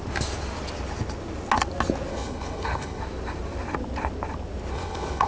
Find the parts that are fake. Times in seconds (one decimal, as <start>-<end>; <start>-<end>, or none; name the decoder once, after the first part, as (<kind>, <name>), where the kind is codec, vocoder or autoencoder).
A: 2.1-3.0 (codec, HILCodec); 4.7-5.3